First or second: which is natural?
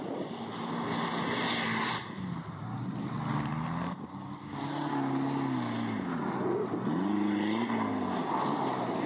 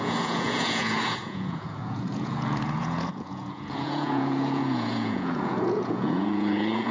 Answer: first